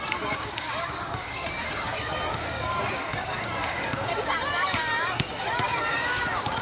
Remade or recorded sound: remade